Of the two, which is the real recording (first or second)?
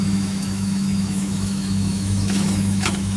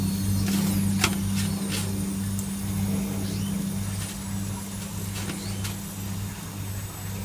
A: second